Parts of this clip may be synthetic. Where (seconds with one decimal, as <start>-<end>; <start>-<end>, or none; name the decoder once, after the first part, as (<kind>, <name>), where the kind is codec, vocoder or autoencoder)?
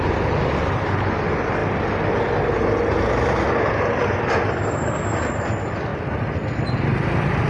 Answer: none